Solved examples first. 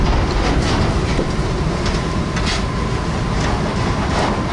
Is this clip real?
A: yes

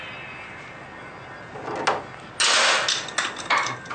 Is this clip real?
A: yes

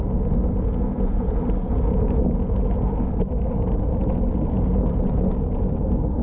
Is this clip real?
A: yes